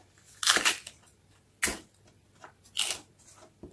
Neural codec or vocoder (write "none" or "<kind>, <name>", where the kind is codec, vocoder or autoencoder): none